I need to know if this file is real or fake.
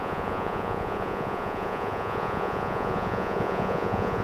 fake